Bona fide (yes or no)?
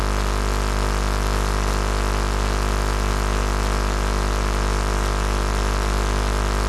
yes